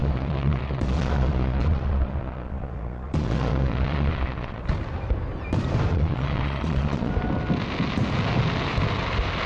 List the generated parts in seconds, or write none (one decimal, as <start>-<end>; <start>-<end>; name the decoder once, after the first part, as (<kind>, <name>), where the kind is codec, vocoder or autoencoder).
0.0-4.6 (vocoder, Vocos); 5.9-7.1